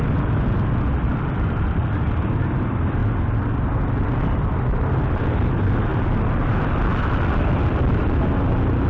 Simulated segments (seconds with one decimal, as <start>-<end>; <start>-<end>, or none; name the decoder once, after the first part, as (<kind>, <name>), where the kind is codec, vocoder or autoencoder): 1.1-1.9 (vocoder, BigVGAN v2); 5.9-6.5; 6.9-8.0

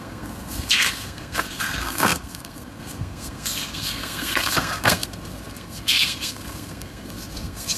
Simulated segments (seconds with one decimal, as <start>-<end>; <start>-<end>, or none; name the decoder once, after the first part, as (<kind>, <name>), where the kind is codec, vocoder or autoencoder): 0.0-7.8 (codec, SNAC)

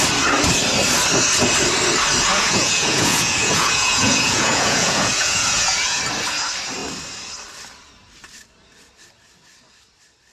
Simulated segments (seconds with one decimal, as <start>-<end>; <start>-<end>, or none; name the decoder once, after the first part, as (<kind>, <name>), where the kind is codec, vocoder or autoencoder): 2.3-6.0 (vocoder, Vocos)

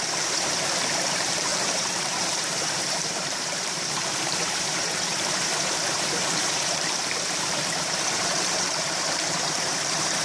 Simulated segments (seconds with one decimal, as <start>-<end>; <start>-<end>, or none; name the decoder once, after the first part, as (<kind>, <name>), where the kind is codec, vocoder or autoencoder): 0.0-10.2 (vocoder, BigVGAN v2)